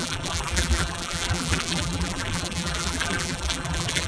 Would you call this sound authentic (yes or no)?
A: no